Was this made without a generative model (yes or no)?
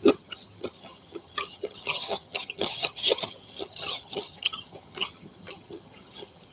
no